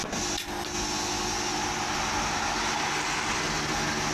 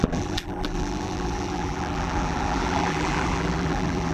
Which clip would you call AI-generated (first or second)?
second